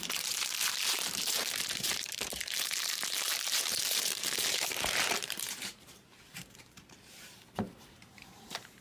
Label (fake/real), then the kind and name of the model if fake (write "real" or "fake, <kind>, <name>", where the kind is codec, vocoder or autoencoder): fake, vocoder, BigVGAN v2